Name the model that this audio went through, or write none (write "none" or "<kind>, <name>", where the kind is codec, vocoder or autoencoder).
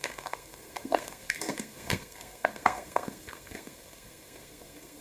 codec, SNAC